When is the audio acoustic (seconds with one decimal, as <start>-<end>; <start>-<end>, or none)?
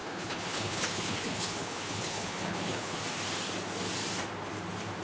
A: 3.0-5.0